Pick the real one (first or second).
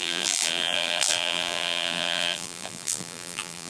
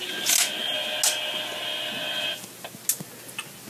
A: second